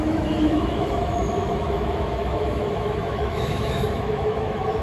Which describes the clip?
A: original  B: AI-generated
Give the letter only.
B